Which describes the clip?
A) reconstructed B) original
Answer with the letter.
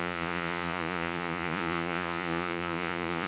A